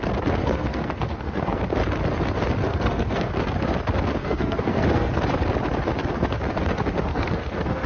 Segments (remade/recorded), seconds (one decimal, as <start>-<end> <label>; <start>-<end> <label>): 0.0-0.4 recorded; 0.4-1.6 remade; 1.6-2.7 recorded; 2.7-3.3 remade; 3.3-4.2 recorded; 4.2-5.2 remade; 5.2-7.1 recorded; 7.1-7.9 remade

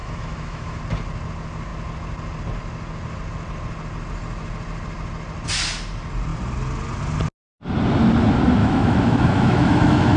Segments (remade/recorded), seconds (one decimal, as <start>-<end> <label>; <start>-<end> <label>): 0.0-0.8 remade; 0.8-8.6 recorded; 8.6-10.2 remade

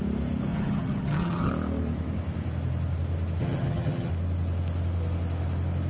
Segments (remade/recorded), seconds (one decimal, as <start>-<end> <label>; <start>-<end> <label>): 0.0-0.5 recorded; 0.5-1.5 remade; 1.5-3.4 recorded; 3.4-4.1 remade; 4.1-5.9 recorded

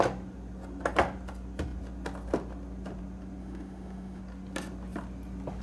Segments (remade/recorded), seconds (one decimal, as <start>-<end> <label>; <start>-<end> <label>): 0.0-3.4 recorded; 3.4-4.2 remade; 4.2-5.6 recorded

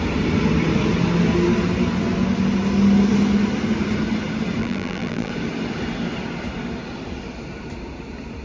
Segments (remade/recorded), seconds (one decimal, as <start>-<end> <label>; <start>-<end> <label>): 0.0-4.6 recorded; 4.6-5.3 remade; 5.3-8.4 recorded

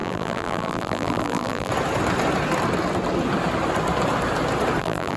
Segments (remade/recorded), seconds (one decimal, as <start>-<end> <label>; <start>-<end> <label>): 0.0-1.7 remade; 1.7-4.8 recorded; 4.8-5.2 remade

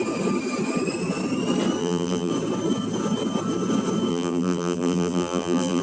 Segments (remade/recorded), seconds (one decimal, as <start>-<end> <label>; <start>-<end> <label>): 0.0-1.8 recorded; 1.8-2.3 remade; 2.3-4.1 recorded; 4.1-5.8 remade